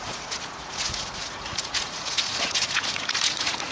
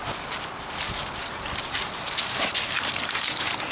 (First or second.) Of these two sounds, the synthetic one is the first